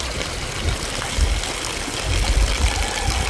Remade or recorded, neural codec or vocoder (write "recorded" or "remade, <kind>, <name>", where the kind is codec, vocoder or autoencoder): recorded